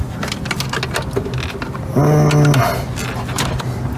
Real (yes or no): yes